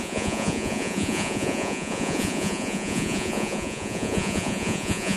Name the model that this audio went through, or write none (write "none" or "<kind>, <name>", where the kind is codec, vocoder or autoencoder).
vocoder, Vocos